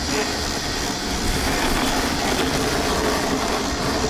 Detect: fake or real real